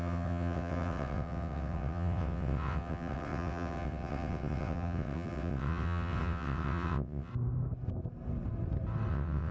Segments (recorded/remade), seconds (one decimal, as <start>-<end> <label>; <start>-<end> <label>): 0.0-7.3 remade; 7.3-9.1 recorded; 9.1-9.5 remade